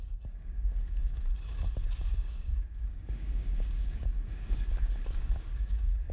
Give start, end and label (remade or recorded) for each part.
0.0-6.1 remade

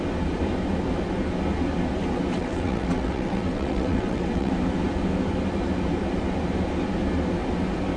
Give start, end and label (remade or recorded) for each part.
0.0-2.3 recorded; 2.3-4.5 remade; 4.5-8.0 recorded

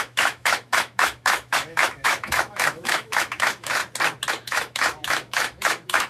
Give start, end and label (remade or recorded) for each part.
0.0-3.8 remade; 3.8-4.3 recorded; 4.3-6.1 remade